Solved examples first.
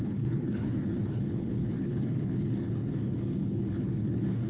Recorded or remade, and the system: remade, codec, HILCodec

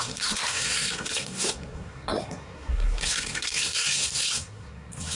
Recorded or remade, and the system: remade, codec, SNAC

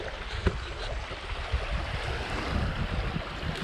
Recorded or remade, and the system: recorded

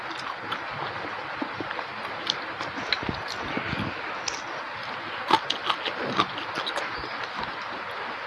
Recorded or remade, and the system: recorded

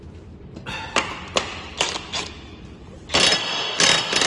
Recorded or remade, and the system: recorded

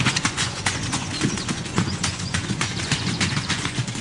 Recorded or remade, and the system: remade, vocoder, Vocos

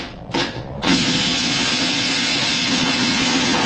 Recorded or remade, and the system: remade, vocoder, Vocos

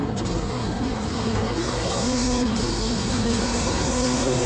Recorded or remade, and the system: remade, codec, SNAC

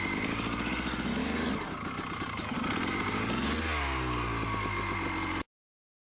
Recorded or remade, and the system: recorded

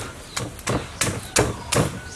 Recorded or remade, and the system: recorded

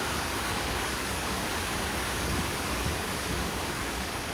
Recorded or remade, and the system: remade, codec, DAC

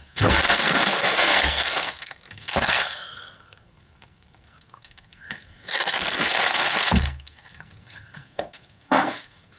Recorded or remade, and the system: remade, codec, SNAC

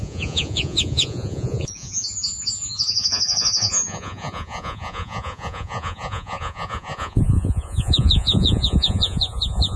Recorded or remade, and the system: remade, vocoder, Vocos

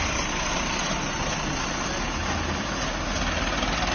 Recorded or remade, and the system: recorded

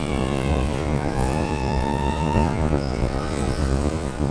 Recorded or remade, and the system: remade, vocoder, Vocos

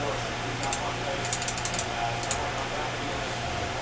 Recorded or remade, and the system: recorded